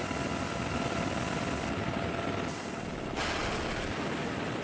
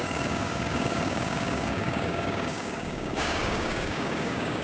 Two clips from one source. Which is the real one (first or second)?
first